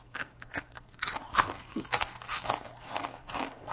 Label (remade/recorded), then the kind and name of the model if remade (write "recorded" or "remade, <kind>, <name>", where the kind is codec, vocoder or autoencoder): remade, codec, SNAC